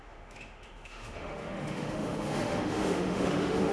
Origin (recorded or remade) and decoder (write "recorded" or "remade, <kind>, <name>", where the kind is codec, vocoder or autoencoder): remade, autoencoder, DAC-VAE